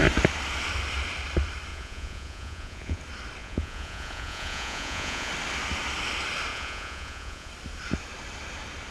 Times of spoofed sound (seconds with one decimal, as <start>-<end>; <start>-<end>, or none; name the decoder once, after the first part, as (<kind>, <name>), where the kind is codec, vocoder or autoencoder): 1.7-3.0 (vocoder, Vocos); 3.4-5.3; 6.5-7.5